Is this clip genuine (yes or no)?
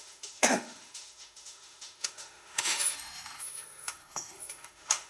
no